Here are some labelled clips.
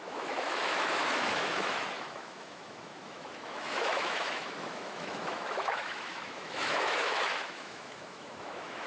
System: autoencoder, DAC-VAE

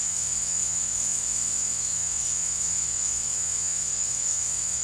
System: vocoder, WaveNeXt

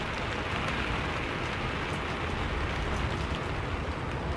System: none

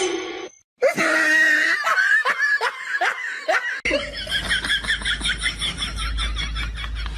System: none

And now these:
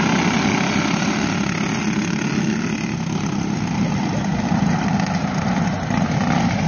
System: none